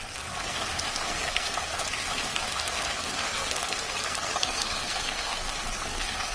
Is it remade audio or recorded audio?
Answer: remade